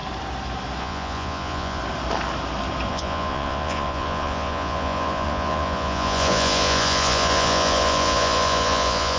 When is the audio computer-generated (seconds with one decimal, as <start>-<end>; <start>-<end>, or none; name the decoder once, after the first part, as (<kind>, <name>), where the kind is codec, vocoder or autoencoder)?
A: 0.8-1.8 (vocoder, Vocos); 2.9-9.2